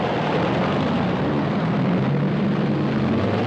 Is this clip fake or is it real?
real